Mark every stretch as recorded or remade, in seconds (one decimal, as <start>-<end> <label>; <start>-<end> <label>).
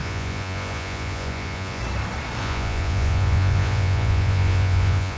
0.0-1.8 remade; 1.8-2.4 recorded; 2.4-5.2 remade